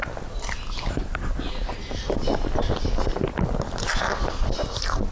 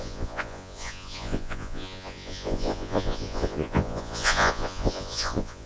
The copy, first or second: second